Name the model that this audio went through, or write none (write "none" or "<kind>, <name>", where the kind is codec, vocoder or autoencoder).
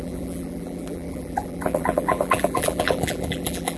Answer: vocoder, BigVGAN v2